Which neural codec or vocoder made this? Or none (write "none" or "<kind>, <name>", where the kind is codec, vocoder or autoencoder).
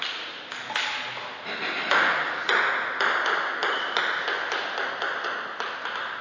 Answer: none